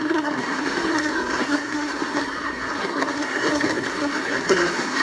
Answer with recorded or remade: remade